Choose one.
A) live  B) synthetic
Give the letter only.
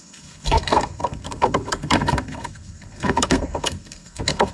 B